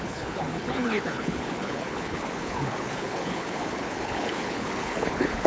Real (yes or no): no